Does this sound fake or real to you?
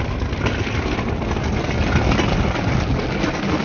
real